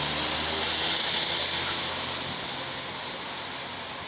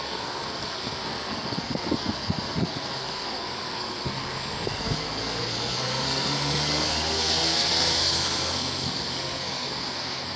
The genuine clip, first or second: first